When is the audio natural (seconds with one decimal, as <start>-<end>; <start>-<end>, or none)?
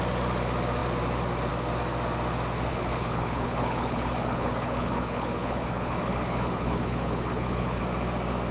0.0-2.7; 7.8-8.5